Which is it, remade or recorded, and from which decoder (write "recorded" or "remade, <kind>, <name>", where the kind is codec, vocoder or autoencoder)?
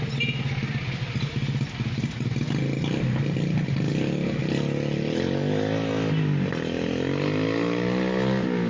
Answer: recorded